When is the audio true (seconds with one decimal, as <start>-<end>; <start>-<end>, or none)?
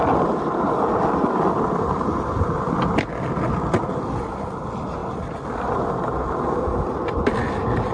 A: 0.0-7.9